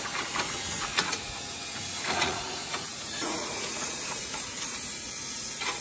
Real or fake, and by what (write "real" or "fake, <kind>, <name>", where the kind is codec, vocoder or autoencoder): fake, vocoder, Vocos